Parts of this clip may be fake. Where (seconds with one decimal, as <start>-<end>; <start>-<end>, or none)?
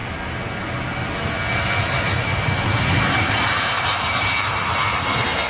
3.3-5.5